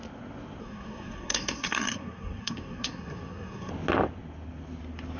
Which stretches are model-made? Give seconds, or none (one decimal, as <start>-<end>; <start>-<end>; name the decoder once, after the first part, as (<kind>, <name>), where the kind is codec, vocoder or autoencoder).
0.6-3.7 (codec, SNAC)